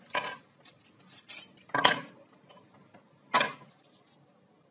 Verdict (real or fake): real